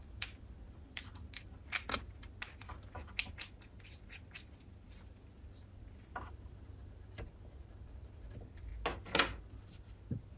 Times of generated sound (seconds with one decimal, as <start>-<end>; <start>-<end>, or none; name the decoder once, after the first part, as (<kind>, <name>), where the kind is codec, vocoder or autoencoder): 0.0-1.6 (vocoder, BigVGAN v2); 4.7-8.7; 9.4-10.4